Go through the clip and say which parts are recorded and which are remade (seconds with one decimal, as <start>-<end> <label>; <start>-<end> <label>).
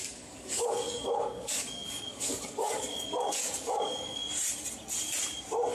0.0-4.2 remade; 4.2-5.7 recorded